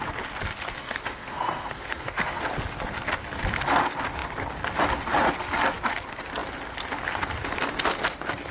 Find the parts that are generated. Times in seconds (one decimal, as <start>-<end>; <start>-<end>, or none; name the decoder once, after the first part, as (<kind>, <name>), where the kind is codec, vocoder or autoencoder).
0.8-2.4 (codec, SNAC)